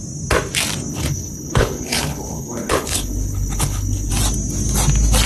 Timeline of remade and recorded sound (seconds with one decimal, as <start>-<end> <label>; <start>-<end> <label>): 0.0-0.9 recorded; 0.9-4.1 remade; 4.1-5.3 recorded